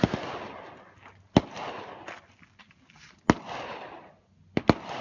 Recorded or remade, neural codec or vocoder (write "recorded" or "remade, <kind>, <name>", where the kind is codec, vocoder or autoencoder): recorded